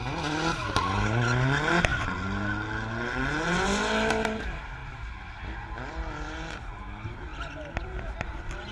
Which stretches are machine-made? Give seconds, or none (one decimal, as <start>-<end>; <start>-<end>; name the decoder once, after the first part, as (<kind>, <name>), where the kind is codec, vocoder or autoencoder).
none